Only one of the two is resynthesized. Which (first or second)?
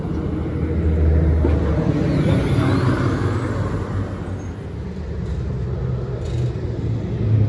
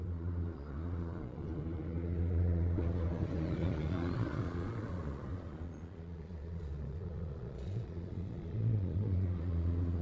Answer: second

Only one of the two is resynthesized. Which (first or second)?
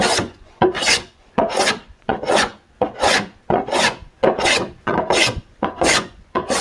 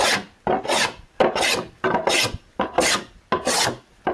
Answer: first